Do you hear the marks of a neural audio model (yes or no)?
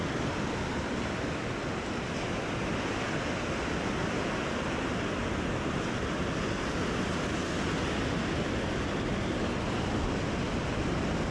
no